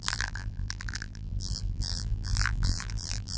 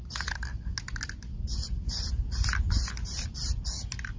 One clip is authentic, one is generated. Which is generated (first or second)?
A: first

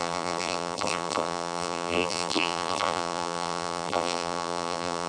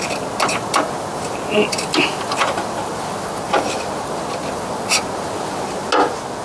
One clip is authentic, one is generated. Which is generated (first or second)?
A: first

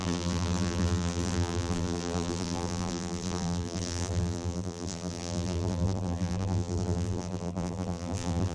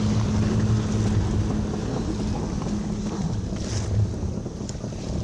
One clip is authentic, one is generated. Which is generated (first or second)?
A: first